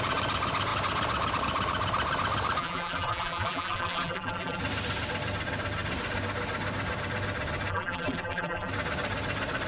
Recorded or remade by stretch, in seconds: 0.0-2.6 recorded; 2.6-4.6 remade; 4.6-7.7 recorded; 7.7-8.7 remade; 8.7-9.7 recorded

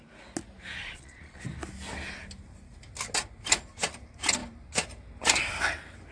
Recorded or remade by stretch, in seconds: 0.0-0.8 recorded; 0.8-1.4 remade; 1.4-6.1 recorded

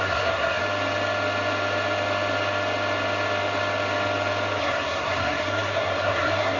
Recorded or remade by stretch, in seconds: 0.0-0.6 remade; 0.6-4.6 recorded; 4.6-6.6 remade